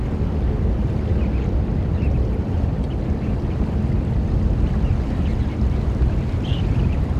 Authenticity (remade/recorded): recorded